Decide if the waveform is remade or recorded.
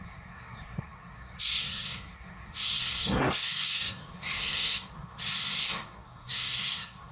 remade